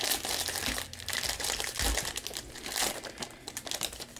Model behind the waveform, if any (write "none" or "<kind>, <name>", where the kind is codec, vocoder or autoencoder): none